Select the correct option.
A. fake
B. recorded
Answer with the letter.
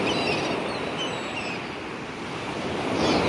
B